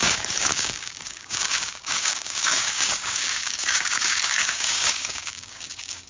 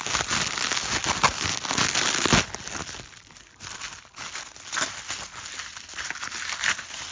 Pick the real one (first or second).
second